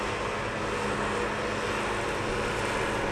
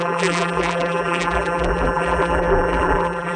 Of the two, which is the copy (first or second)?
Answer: second